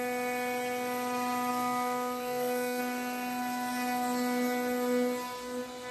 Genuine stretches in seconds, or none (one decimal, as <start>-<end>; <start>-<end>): 0.0-1.5; 2.8-5.9